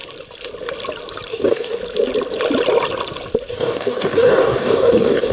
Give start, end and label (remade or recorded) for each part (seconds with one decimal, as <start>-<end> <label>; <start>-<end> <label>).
0.0-1.3 recorded; 1.3-1.8 remade; 1.8-3.5 recorded; 3.5-5.3 remade